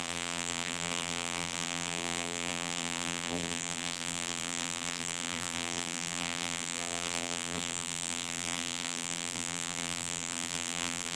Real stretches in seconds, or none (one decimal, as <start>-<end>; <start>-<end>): none